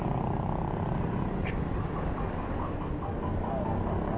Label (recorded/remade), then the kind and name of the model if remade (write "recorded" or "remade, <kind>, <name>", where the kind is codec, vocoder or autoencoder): recorded